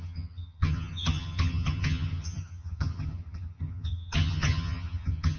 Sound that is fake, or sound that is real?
fake